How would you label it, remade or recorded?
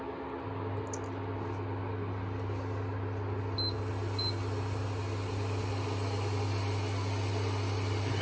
recorded